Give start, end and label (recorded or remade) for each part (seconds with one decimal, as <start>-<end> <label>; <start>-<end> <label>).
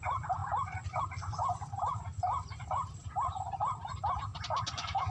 0.0-0.4 remade; 0.4-1.0 recorded; 1.0-4.3 remade; 4.3-5.1 recorded